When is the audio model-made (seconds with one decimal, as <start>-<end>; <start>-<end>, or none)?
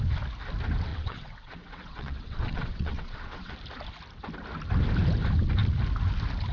0.9-3.5